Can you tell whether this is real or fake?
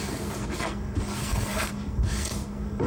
fake